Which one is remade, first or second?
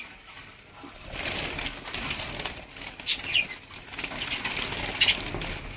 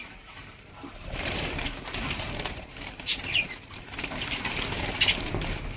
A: second